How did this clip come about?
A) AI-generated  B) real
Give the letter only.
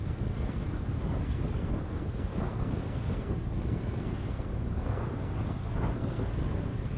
A